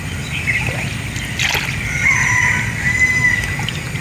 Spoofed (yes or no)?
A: no